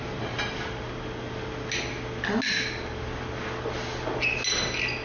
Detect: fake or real real